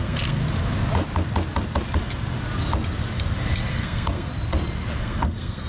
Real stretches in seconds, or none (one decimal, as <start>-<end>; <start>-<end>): 0.4-3.7; 4.3-5.0